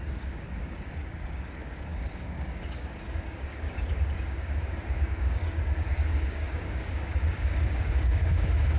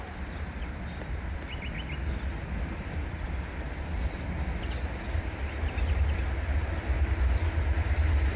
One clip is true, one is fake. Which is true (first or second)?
second